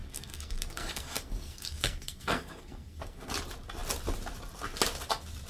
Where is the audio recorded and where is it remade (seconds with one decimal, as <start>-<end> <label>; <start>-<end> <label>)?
0.0-3.3 remade; 3.3-5.5 recorded